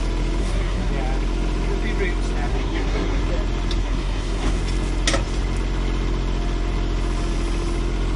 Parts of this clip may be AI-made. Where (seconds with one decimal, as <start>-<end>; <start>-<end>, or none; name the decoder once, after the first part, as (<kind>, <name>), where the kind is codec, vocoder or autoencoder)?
0.4-0.9 (codec, SNAC); 2.5-3.2; 3.8-4.6